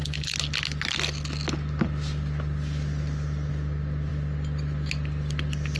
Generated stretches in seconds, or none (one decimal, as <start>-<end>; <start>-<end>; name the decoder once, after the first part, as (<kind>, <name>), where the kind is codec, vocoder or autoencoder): none